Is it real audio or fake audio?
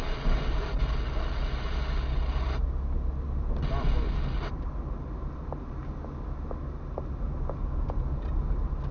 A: real